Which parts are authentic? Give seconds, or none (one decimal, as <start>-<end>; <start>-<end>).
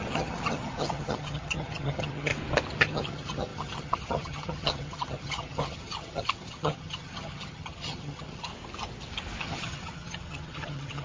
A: 2.3-2.8; 8.5-9.4